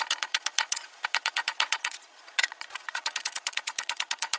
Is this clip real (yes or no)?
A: no